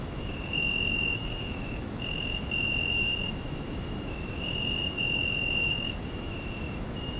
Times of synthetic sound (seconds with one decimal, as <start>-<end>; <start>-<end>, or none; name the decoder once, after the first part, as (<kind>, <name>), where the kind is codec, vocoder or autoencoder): 0.0-7.2 (autoencoder, DAC-VAE)